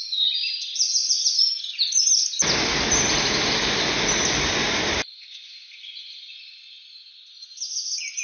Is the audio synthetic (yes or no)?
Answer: no